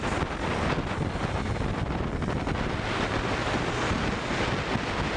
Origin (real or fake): real